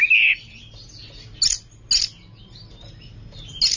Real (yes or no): yes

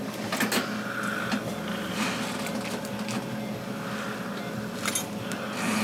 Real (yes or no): yes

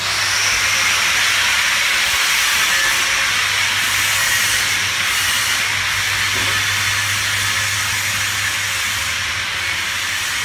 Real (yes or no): yes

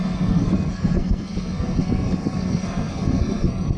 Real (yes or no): no